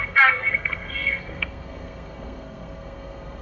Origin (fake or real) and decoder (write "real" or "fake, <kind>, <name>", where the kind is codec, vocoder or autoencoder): fake, codec, SNAC